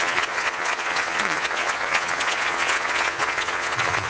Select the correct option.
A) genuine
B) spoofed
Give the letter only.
B